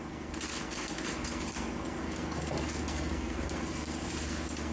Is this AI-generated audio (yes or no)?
yes